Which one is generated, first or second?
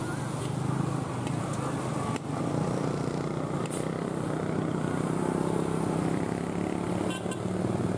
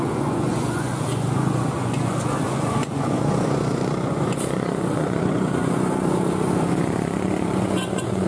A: second